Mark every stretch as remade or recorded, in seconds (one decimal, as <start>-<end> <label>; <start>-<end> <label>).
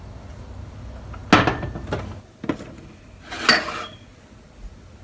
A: 0.0-5.0 recorded